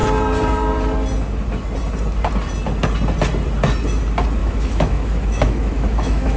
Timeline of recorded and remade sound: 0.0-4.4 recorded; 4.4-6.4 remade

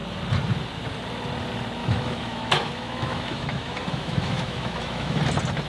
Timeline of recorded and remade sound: 0.0-1.8 recorded; 1.8-5.2 remade; 5.2-5.7 recorded